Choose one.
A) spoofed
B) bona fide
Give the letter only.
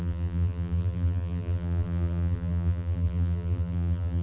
A